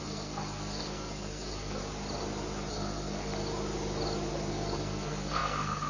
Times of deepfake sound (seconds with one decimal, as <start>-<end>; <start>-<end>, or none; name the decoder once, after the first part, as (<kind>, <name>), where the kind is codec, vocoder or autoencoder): 0.0-1.8 (codec, SNAC); 2.7-3.3; 4.5-5.9